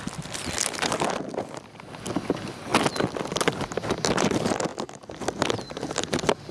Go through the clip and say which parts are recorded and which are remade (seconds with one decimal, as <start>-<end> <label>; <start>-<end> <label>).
0.0-6.5 recorded